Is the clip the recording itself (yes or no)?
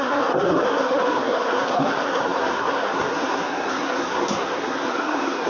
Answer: no